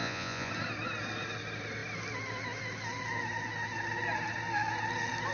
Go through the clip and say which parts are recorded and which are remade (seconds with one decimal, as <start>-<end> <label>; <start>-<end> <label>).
0.0-0.5 remade; 0.5-5.3 recorded